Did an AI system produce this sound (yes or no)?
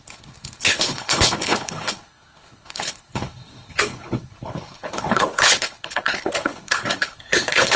yes